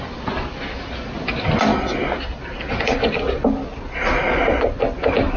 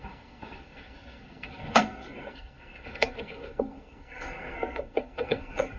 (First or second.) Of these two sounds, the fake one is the second